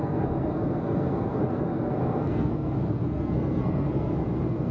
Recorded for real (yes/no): no